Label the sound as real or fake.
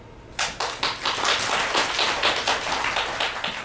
real